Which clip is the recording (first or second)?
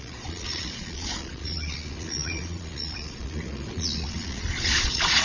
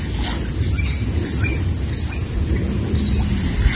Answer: second